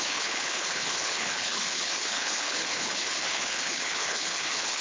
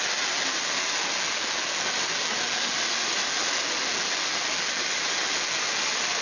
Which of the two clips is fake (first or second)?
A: first